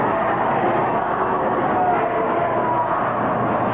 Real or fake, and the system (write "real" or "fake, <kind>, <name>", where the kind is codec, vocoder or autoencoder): real